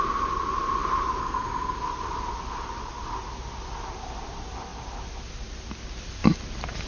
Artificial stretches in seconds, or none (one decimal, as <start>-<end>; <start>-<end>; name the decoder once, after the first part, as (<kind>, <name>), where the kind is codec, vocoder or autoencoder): 1.2-1.8 (codec, SNAC)